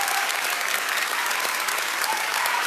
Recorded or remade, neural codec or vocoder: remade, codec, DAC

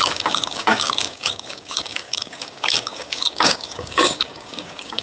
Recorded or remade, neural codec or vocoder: remade, codec, DAC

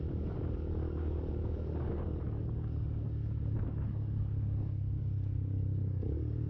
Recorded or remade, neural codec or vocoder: remade, codec, DAC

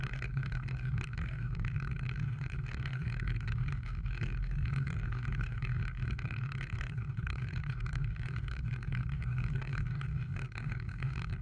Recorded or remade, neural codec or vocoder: remade, codec, DAC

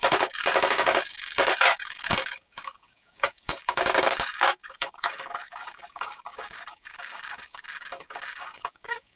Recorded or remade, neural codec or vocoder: remade, codec, DAC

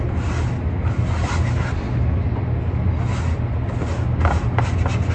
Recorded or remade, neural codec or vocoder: recorded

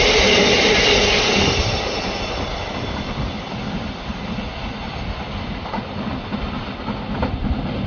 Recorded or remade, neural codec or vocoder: recorded